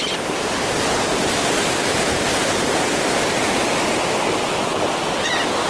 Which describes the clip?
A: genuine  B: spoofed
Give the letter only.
A